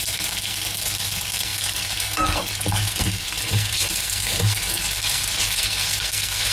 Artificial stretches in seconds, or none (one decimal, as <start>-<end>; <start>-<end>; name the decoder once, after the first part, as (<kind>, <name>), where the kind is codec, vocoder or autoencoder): 0.0-6.5 (codec, SNAC)